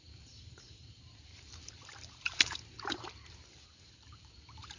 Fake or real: fake